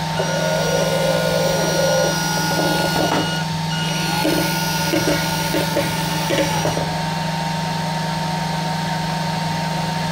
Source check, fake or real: real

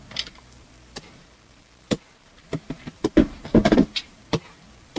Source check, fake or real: fake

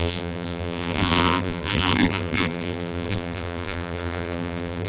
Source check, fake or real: fake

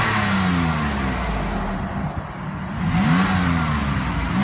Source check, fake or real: real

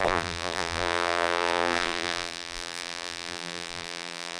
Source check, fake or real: fake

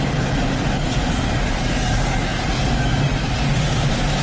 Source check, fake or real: real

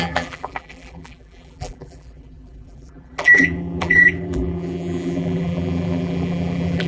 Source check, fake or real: fake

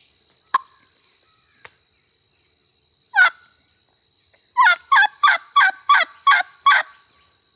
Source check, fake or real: fake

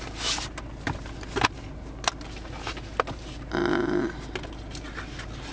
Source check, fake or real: real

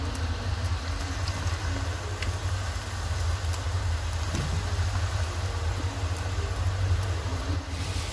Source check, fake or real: real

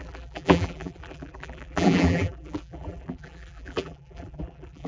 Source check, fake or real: fake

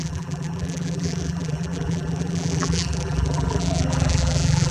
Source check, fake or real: fake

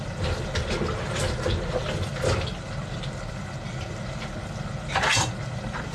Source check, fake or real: real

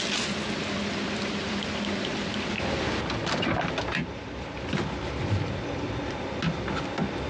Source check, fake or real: real